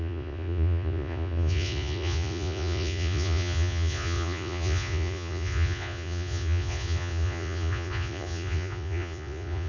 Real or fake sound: fake